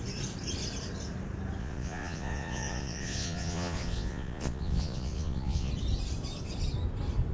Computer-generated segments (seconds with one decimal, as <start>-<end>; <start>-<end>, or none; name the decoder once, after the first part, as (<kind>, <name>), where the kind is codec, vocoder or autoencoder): 1.6-5.7 (vocoder, Vocos)